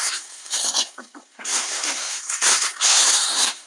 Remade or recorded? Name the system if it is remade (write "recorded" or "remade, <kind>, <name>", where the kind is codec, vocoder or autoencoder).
remade, codec, SNAC